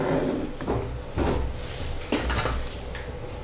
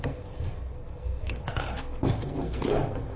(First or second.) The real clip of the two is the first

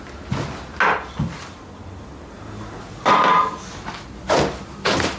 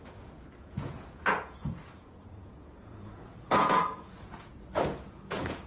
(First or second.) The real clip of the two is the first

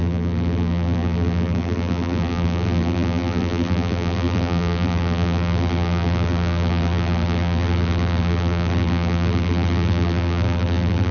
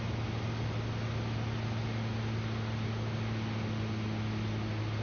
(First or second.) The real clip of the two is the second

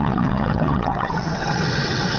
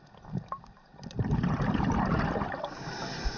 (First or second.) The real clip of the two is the second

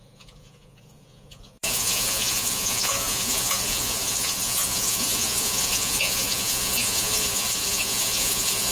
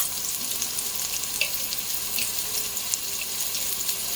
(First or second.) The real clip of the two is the second